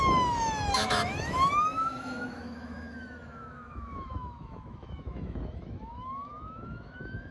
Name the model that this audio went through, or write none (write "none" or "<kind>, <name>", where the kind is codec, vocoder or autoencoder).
autoencoder, DAC-VAE